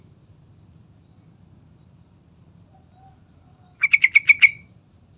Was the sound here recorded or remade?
recorded